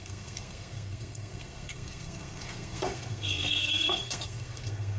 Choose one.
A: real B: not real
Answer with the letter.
B